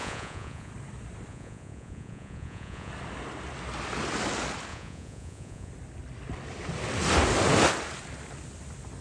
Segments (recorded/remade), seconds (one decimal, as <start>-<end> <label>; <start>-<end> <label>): 0.0-0.7 remade; 0.7-1.3 recorded; 1.3-2.9 remade; 2.9-4.7 recorded; 4.7-5.7 remade; 5.7-9.0 recorded